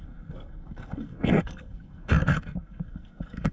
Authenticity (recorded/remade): remade